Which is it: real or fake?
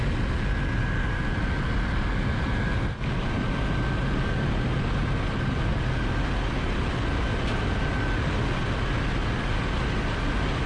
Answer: real